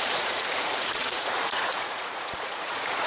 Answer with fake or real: fake